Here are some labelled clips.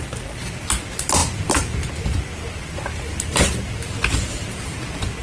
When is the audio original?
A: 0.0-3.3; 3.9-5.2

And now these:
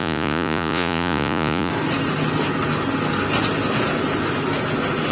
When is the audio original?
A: 1.7-5.1